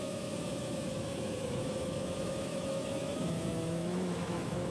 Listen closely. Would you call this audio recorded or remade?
remade